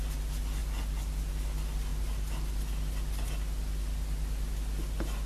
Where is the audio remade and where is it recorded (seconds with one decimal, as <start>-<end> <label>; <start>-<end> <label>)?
0.0-5.3 recorded